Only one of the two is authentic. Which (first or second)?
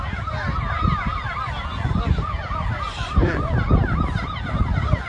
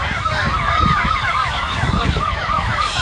first